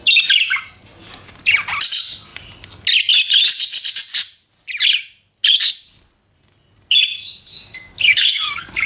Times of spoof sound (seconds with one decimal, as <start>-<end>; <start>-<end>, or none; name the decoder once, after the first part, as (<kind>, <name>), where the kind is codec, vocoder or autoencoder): 7.5-8.9 (codec, DAC)